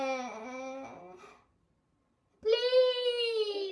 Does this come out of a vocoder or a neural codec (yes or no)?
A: no